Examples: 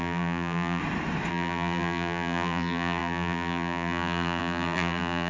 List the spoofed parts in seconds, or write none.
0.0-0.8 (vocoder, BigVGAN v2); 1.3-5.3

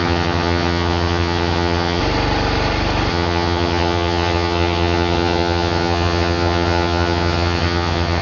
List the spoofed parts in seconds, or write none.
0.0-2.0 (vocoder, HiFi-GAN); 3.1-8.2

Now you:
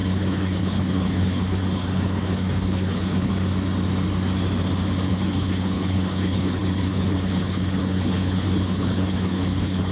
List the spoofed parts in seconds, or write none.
0.0-3.3 (codec, HILCodec); 5.1-9.9

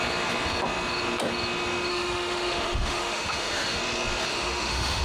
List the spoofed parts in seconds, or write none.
1.9-3.8 (autoencoder, DAC-VAE); 4.3-5.0